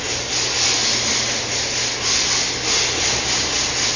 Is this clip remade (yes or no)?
no